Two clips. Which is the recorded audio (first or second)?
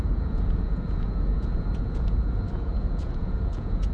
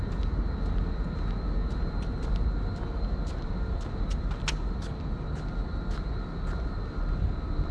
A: second